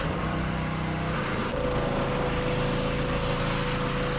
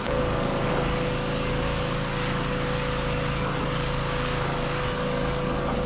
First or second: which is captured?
first